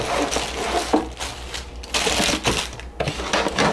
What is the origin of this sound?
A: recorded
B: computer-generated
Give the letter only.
A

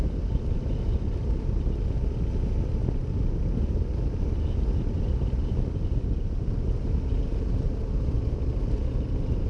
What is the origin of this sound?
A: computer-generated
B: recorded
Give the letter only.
B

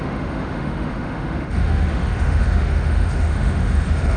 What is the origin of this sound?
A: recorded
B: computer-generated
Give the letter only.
B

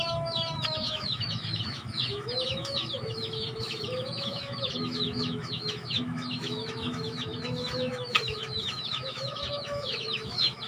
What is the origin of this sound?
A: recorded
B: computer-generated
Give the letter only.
B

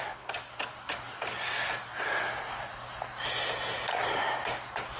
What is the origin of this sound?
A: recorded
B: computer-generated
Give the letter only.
A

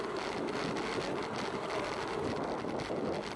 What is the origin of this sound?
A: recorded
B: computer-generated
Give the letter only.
A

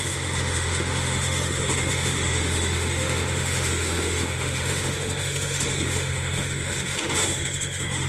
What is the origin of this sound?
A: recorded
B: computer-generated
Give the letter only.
B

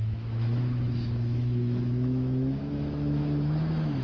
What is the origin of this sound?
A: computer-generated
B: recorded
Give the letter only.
A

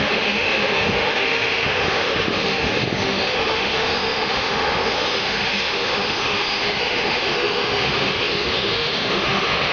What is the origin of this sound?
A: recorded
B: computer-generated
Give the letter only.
B